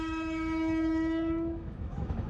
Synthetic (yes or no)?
yes